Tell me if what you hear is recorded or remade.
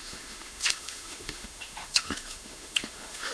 remade